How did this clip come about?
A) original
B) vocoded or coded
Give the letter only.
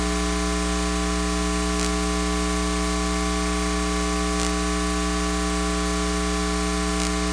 A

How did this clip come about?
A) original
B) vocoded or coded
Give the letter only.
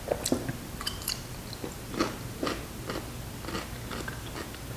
A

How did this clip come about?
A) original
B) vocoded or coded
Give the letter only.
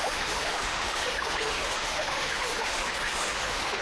B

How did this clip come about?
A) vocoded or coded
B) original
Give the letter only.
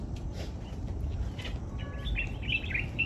B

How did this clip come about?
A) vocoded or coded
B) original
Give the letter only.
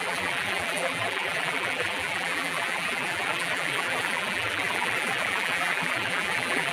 A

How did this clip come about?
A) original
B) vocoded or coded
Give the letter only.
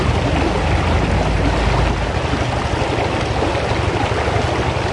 A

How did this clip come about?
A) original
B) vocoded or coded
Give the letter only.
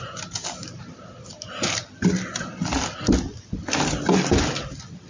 A